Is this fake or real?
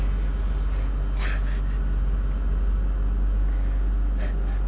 real